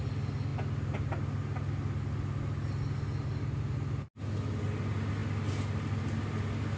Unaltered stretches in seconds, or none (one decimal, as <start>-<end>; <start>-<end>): 0.0-6.8

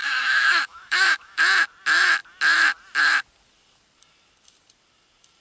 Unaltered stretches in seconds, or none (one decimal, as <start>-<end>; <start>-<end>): 1.4-5.4

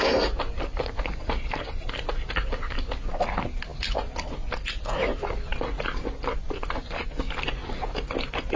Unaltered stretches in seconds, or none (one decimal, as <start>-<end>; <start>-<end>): 0.0-8.6

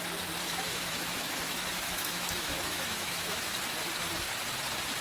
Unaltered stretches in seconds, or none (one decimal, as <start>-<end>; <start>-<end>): 0.0-0.5; 3.5-5.0

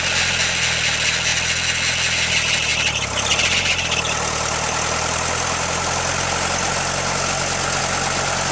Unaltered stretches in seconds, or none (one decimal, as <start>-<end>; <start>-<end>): 0.0-8.5

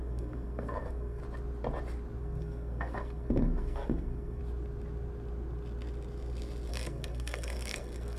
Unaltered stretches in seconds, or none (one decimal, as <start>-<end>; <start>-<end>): 1.2-2.2; 4.4-6.7

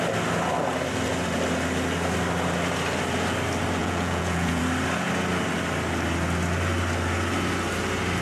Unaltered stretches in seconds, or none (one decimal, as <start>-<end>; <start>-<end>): 0.0-3.8; 4.6-8.2

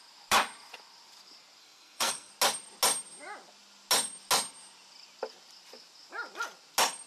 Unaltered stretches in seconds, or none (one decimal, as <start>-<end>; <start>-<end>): 0.0-1.6; 2.3-7.1